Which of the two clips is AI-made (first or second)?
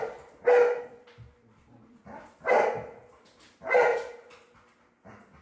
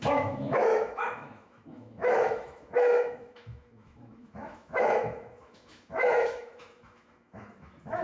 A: second